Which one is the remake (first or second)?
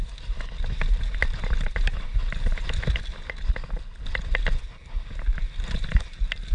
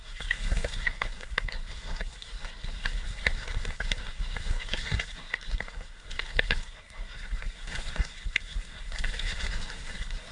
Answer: second